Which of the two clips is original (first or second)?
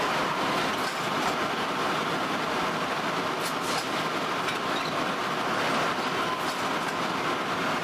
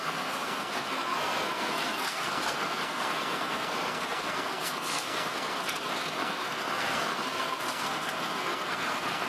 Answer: first